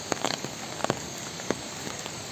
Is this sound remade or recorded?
remade